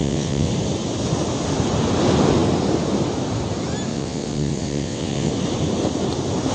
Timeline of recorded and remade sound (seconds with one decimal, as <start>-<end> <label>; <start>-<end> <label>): 0.0-0.5 remade; 0.5-3.9 recorded; 3.9-5.3 remade; 5.3-6.5 recorded